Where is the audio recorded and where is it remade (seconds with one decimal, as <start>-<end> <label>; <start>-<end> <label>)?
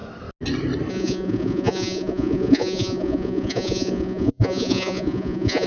0.0-0.9 recorded; 0.9-5.7 remade